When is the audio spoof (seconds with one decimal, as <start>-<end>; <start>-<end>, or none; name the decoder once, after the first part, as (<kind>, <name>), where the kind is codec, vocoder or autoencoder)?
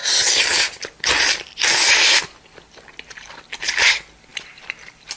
4.3-5.2 (vocoder, BigVGAN v2)